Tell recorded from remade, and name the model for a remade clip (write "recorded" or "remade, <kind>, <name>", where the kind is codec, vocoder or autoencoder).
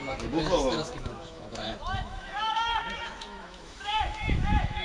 remade, autoencoder, DAC-VAE